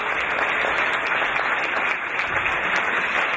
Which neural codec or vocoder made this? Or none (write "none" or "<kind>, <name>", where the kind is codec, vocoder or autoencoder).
none